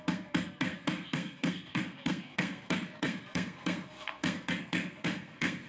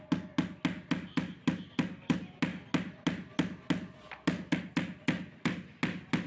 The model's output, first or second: first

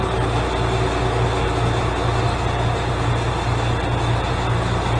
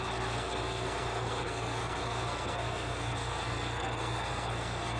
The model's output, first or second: second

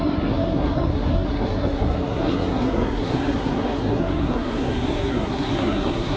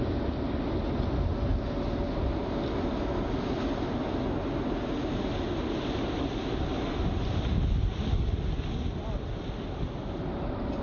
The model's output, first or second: first